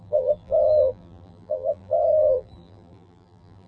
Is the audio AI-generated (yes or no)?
yes